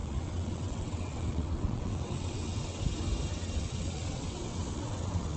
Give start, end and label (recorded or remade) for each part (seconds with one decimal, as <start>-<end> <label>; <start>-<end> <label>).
0.0-2.8 remade; 2.8-3.3 recorded; 3.3-5.4 remade